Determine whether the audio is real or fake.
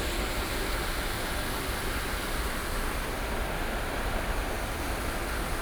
real